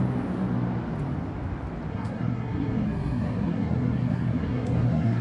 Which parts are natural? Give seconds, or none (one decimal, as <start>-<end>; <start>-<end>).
0.0-1.9